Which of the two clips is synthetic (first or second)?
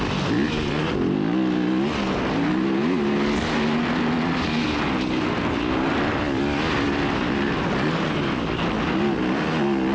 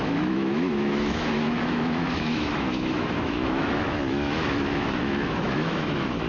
second